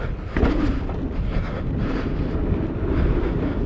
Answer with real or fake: real